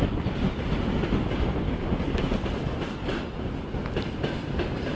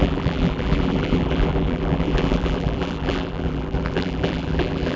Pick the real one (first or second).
first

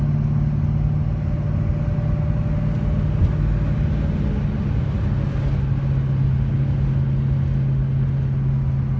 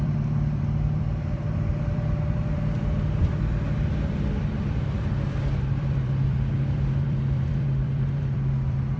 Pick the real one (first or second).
first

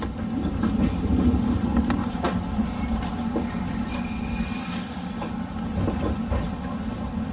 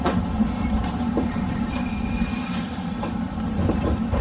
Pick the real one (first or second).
first